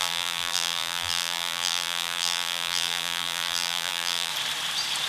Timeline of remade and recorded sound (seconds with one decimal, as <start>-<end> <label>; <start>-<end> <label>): 0.0-4.3 remade; 4.3-5.1 recorded